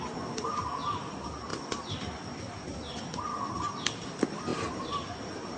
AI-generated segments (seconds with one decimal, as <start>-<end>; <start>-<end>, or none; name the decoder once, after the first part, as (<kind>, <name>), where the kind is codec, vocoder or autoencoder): none